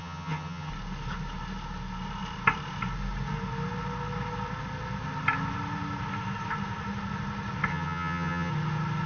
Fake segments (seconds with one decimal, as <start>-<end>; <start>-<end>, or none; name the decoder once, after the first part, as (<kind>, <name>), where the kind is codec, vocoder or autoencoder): 0.0-0.7 (vocoder, HiFi-GAN); 7.7-8.5